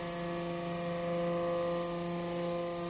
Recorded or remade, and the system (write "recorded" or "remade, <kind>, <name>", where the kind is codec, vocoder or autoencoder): recorded